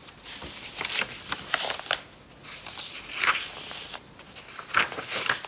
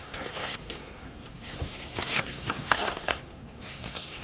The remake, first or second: second